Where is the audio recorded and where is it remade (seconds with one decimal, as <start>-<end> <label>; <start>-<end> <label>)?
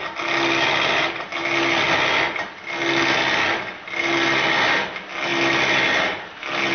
0.0-6.7 recorded